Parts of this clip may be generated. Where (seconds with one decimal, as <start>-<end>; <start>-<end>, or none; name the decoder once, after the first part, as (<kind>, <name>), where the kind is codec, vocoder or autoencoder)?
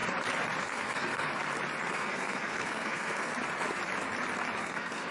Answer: 0.6-1.3 (codec, SNAC); 1.9-3.3; 4.6-5.1